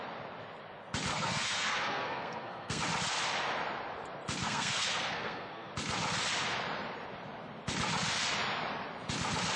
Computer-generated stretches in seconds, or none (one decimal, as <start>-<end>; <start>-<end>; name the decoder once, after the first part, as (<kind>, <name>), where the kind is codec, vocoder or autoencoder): 1.1-2.8 (codec, SNAC); 4.4-5.7